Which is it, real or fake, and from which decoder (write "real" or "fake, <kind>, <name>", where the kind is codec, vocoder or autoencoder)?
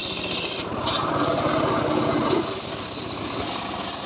fake, vocoder, BigVGAN v2